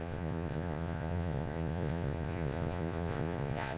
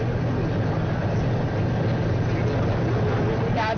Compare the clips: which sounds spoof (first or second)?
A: first